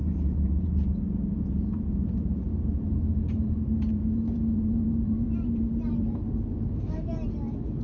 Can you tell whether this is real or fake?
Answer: fake